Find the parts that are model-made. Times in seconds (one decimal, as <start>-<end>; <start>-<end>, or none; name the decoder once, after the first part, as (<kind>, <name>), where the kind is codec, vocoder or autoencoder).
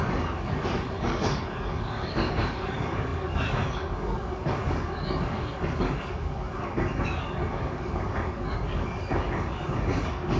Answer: 0.0-10.4 (codec, DAC)